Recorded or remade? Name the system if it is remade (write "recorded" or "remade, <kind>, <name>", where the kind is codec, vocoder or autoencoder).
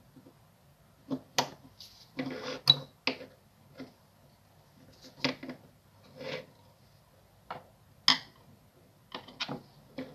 recorded